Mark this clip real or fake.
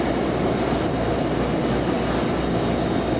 real